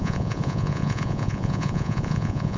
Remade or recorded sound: remade